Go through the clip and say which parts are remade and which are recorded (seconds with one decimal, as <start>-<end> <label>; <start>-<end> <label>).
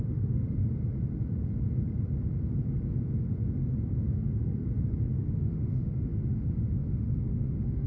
0.0-0.6 remade; 0.6-4.0 recorded; 4.0-4.6 remade; 4.6-5.2 recorded; 5.2-7.9 remade